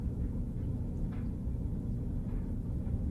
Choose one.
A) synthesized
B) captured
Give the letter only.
B